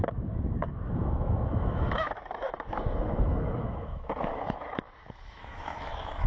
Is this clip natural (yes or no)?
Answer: no